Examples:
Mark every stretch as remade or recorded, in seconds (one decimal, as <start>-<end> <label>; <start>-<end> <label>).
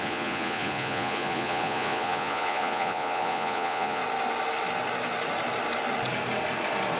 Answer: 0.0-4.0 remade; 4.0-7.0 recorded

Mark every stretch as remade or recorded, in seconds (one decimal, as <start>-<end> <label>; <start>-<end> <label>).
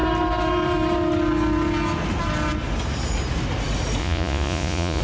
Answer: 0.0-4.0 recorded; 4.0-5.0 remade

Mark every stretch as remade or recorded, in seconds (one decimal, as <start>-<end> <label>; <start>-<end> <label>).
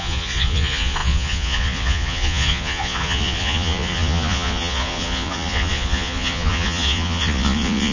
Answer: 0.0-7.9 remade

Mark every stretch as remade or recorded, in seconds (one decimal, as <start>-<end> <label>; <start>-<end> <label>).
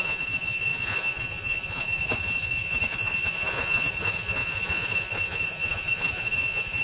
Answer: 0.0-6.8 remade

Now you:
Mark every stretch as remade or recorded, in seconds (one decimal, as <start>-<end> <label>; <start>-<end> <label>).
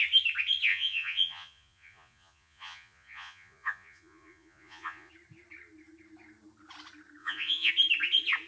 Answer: 0.0-0.7 recorded; 0.7-5.1 remade; 5.1-7.2 recorded; 7.2-7.7 remade; 7.7-8.5 recorded